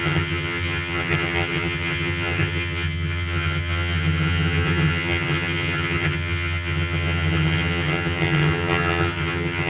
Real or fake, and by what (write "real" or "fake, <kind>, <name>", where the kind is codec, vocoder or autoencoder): fake, vocoder, HiFi-GAN